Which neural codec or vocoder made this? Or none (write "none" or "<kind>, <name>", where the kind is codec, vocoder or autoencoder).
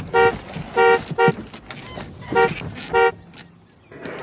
none